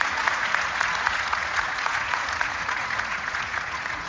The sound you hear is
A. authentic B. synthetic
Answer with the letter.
B